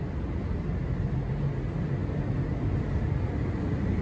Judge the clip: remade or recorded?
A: recorded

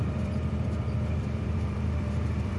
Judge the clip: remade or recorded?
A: remade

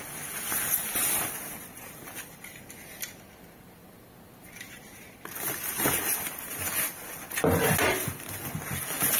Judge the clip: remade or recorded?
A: recorded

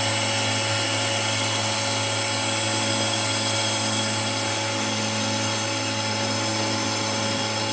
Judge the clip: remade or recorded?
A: recorded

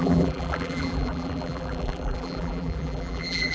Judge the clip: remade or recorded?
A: remade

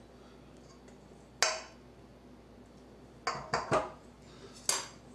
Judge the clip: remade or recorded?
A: recorded